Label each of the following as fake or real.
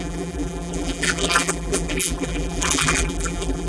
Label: fake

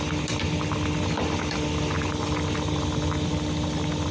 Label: real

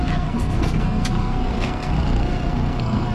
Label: fake